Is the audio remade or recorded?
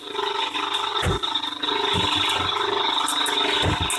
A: recorded